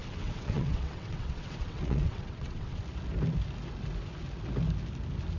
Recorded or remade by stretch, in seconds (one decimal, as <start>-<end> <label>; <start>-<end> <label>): 0.0-2.8 remade; 2.8-5.4 recorded